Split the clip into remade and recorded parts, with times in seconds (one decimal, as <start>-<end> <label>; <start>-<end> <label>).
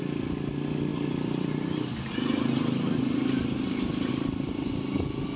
0.0-5.4 recorded